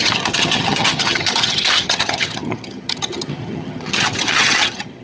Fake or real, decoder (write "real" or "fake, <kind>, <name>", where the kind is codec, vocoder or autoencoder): fake, vocoder, HiFi-GAN